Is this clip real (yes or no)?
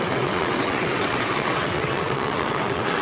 no